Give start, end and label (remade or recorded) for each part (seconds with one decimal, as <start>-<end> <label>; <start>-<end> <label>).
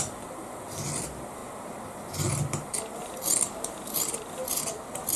0.0-1.4 remade; 1.4-1.9 recorded; 1.9-4.4 remade; 4.4-5.2 recorded